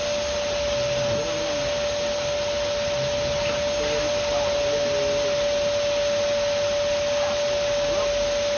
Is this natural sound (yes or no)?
yes